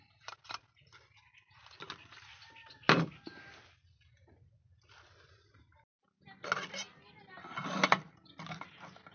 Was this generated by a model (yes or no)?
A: no